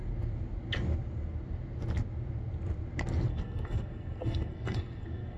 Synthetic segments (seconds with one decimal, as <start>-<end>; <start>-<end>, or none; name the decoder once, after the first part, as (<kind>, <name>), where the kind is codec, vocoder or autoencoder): 3.3-5.4 (codec, SNAC)